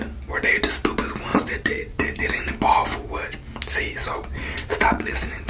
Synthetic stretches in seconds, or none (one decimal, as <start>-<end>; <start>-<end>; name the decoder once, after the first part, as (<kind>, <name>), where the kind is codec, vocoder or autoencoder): 1.3-2.2 (vocoder, WaveNeXt); 4.0-5.5